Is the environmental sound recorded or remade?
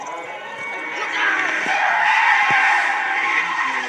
recorded